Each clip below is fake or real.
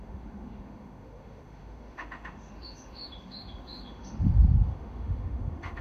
fake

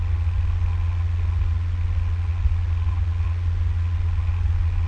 fake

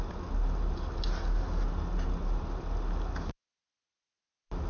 real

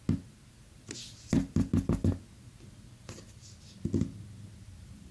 real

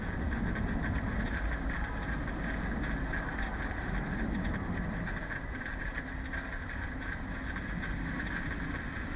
real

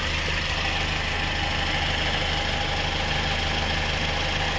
real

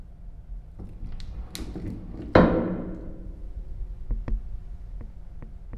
real